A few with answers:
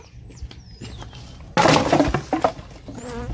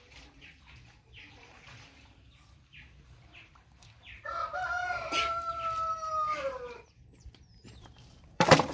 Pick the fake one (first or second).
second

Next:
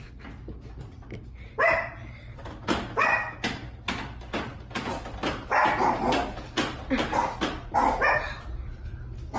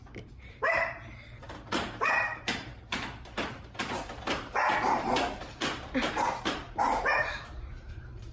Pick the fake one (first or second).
second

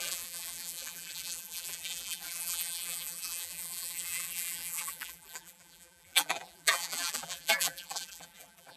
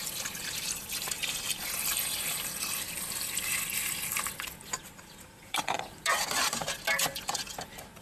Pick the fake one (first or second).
first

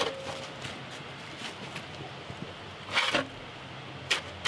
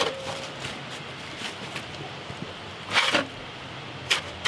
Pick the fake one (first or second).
second